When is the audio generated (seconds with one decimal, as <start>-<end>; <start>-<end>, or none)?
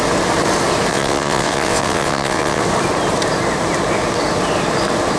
0.9-2.6